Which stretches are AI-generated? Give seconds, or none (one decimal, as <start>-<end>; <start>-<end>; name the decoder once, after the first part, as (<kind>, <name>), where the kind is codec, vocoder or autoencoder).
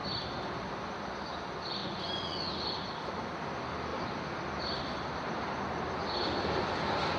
1.8-2.5 (vocoder, Vocos)